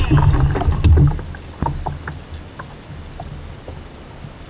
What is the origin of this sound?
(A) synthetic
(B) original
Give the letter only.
B